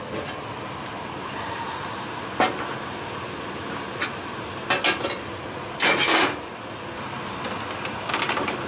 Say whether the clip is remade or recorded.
recorded